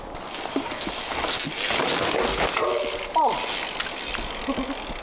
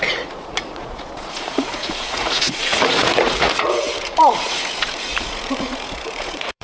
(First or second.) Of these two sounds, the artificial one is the second